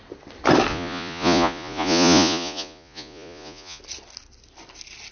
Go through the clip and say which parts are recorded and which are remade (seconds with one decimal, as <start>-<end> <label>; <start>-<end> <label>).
0.0-0.7 recorded; 0.7-3.8 remade; 3.8-5.1 recorded